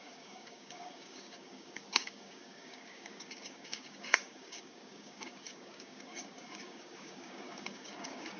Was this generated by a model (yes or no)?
yes